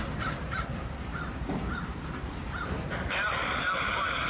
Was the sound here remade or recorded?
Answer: remade